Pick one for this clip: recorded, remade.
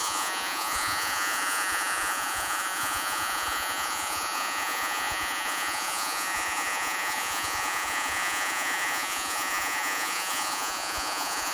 remade